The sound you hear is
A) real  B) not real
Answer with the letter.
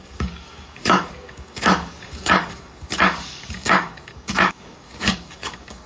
B